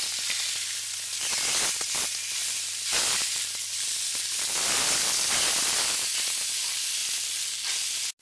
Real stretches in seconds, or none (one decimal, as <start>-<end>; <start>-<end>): 0.0-2.4; 6.0-7.0; 7.7-8.2